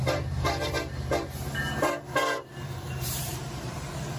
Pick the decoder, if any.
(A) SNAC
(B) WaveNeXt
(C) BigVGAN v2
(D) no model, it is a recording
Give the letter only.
C